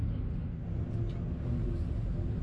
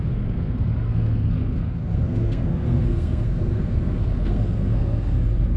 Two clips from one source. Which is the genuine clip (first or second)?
first